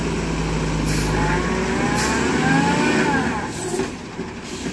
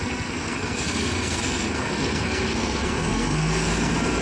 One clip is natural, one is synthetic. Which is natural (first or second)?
first